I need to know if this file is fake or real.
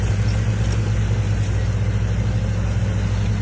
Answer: real